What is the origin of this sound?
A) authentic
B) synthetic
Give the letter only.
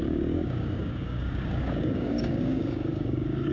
B